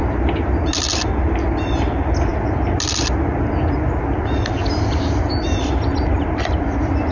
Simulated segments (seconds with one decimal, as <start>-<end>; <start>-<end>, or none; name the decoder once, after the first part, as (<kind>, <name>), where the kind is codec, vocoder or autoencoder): none